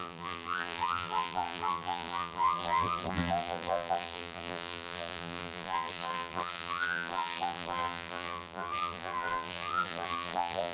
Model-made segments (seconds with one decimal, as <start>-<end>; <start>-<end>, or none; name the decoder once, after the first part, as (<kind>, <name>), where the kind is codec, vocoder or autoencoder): 0.0-10.7 (vocoder, BigVGAN v2)